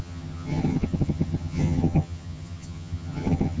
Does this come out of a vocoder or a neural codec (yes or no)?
yes